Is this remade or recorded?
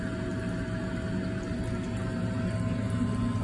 recorded